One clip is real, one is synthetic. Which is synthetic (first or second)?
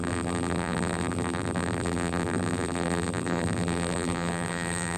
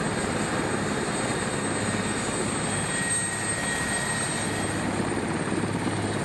first